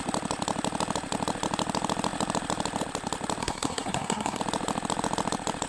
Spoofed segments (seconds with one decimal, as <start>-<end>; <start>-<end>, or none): 3.4-4.4